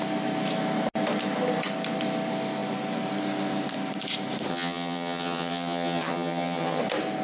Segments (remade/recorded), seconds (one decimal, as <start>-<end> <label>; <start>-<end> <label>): 0.0-4.5 recorded; 4.5-6.8 remade; 6.8-7.2 recorded